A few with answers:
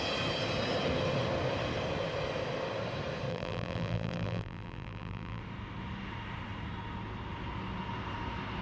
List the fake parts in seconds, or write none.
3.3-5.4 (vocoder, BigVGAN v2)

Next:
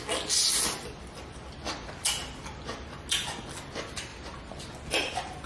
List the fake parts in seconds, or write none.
4.1-4.7 (vocoder, BigVGAN v2)